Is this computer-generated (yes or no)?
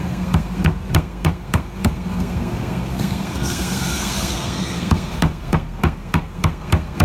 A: yes